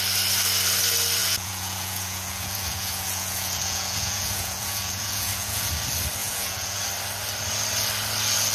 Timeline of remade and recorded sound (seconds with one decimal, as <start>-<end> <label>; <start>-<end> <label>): 0.0-1.2 recorded; 1.2-5.7 remade; 5.7-6.2 recorded; 6.2-6.8 remade; 6.8-8.5 recorded